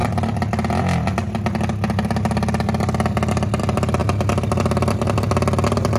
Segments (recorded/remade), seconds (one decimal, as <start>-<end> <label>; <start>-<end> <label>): 0.0-6.0 recorded